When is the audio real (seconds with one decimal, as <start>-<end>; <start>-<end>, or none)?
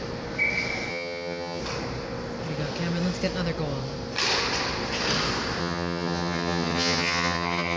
0.0-0.9; 1.6-5.6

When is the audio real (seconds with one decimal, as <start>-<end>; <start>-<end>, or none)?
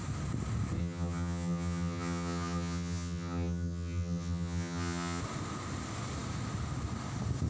0.0-0.8; 5.2-7.5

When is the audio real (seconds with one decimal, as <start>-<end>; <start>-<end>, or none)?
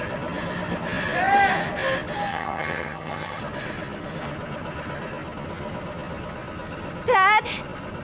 0.0-2.3; 3.4-8.0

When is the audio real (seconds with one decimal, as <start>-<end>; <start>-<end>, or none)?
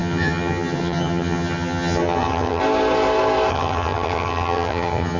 2.6-3.5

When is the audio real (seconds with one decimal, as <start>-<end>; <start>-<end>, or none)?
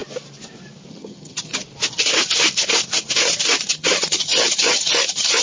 0.0-0.9; 1.5-3.7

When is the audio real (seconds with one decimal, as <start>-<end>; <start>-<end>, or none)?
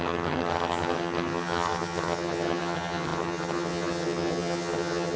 none